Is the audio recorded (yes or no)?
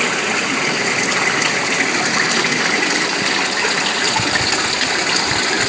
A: yes